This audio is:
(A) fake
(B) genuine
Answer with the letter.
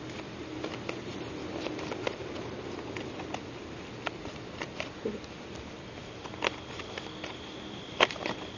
B